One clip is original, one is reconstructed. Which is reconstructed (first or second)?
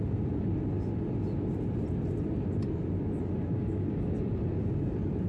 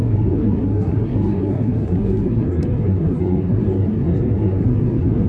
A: second